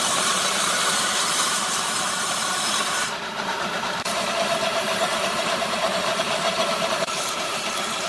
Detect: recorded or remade remade